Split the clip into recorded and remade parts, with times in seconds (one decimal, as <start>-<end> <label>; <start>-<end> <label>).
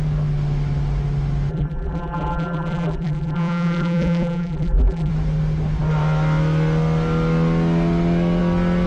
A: 0.0-1.5 recorded; 1.5-5.1 remade; 5.1-8.9 recorded